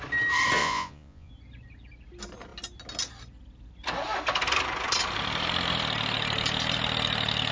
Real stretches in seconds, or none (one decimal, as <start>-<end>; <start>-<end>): 0.0-0.6; 1.3-7.5